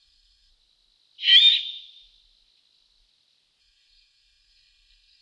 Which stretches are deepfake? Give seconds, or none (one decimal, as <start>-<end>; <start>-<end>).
0.0-0.5; 3.6-5.2